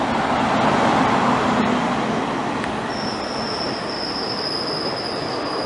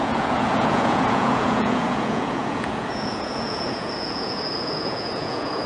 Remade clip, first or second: second